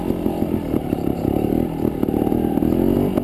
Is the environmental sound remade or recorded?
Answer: recorded